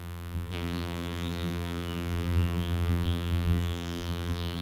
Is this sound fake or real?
fake